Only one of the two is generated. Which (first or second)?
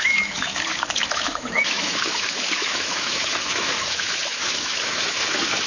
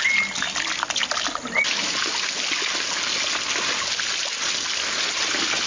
first